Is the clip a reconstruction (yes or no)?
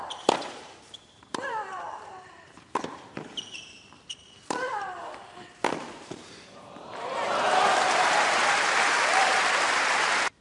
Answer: yes